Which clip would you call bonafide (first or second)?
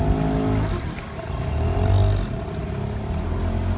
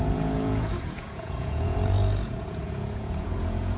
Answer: first